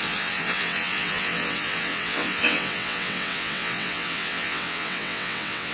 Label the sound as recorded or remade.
remade